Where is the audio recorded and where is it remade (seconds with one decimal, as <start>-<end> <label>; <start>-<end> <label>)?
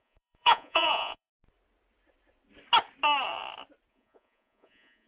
0.0-1.3 remade; 1.3-3.9 recorded; 3.9-5.1 remade